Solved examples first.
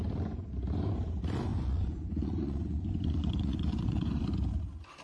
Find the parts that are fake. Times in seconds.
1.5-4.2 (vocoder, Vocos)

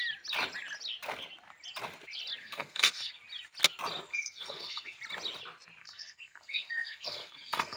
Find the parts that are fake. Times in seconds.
2.4-3.1 (codec, SNAC); 4.1-5.0; 5.8-7.8

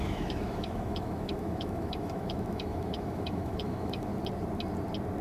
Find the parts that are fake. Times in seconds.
0.0-4.1 (autoencoder, DAC-VAE)

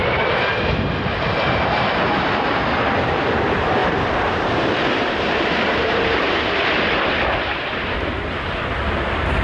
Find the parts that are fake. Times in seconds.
0.0-0.6 (vocoder, BigVGAN v2); 3.8-6.0